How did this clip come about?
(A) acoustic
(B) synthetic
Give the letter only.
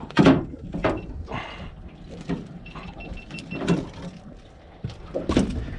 A